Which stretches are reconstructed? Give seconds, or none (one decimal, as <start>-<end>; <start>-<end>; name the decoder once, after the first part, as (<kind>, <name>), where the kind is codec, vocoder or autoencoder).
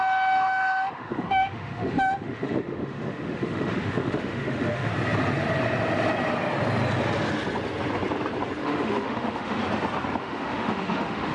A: 0.0-4.9 (autoencoder, DAC-VAE); 8.6-9.6; 10.2-11.3